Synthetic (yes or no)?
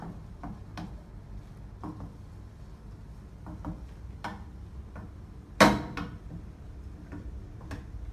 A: no